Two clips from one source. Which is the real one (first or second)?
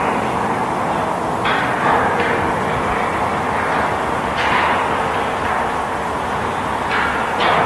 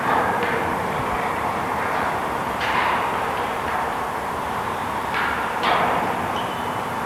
first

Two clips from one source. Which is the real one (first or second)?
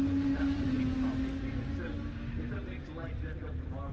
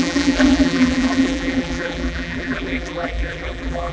first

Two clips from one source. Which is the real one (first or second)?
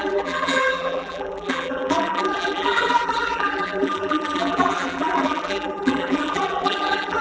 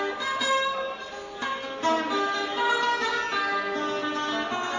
second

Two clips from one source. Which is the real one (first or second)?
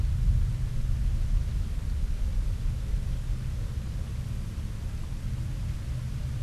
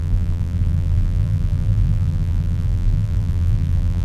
first